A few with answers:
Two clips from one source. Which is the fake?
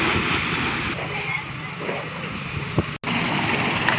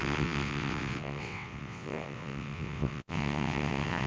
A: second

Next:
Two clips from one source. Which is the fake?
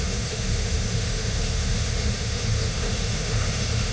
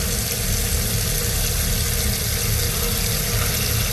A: first